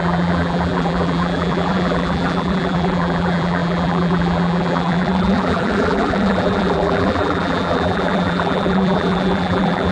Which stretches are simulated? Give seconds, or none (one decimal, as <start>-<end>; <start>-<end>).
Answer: 0.0-9.9